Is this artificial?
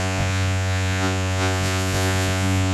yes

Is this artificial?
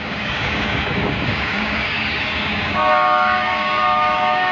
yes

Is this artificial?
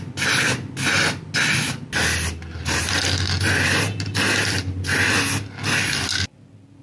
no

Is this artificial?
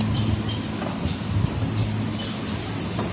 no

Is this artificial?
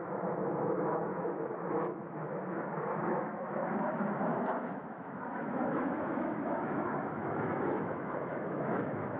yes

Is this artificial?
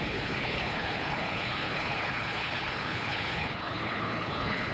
yes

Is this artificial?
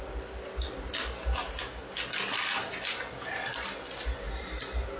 no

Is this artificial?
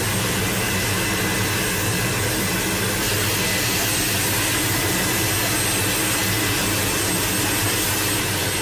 no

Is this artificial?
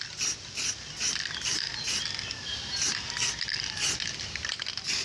no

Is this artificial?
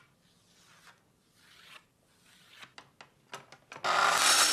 no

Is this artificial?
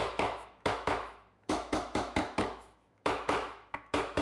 yes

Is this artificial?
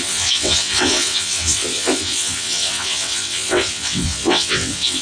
yes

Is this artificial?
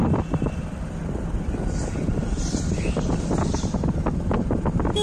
no